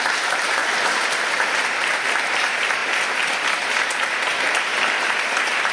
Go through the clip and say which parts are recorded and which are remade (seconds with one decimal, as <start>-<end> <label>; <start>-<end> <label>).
0.0-0.6 remade; 0.6-1.6 recorded; 1.6-2.8 remade; 2.8-3.6 recorded; 3.6-4.3 remade; 4.3-5.7 recorded